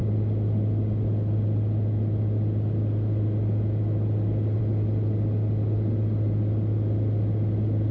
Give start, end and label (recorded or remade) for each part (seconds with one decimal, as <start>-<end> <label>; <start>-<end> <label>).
0.0-7.9 recorded